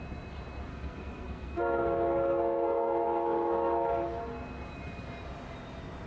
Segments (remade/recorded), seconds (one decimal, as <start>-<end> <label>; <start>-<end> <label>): 0.0-0.7 recorded; 0.7-4.2 remade; 4.2-6.1 recorded